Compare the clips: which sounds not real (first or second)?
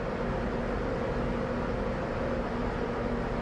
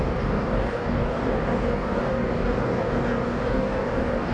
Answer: second